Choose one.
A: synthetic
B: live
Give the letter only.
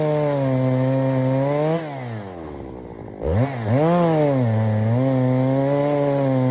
B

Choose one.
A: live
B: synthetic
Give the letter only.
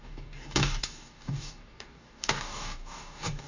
B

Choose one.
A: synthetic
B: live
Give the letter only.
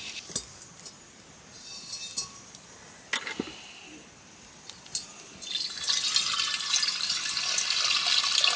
B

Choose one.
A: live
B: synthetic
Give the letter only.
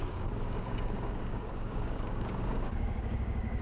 B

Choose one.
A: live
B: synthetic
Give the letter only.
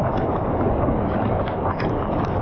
B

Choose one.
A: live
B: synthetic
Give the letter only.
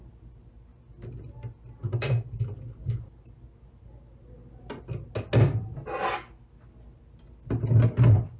A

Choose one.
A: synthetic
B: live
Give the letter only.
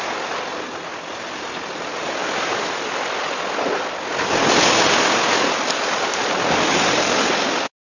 B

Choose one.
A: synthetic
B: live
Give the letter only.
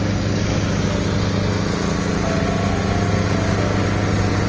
B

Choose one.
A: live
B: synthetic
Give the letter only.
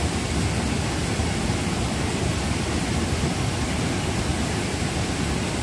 A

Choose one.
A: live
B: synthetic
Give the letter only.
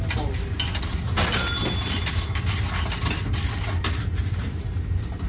A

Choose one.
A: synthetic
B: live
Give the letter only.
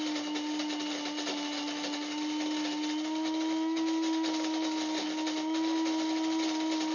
B